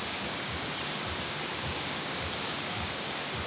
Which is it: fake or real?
fake